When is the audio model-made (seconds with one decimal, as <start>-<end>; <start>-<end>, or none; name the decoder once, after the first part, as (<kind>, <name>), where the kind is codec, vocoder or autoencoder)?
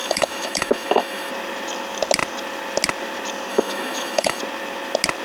0.0-1.3 (autoencoder, DAC-VAE); 3.5-4.4